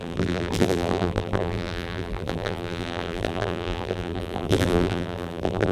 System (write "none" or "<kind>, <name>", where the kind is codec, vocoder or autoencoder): vocoder, BigVGAN v2